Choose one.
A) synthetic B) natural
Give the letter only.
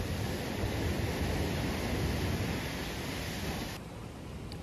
B